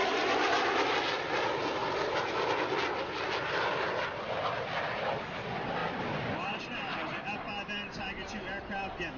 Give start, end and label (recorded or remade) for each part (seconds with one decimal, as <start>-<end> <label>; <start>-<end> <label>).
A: 0.0-5.8 recorded; 5.8-6.6 remade; 6.6-9.2 recorded